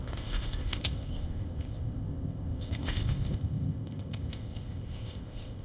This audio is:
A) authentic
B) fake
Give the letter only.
B